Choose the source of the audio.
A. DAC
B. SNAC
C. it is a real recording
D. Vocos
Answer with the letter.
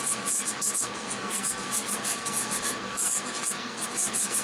B